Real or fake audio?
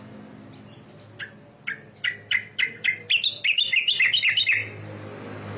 real